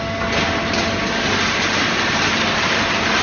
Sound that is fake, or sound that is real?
real